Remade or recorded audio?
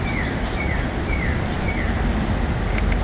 recorded